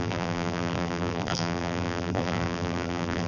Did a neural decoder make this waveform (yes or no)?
yes